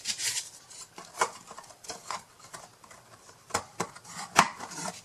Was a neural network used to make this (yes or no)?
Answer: yes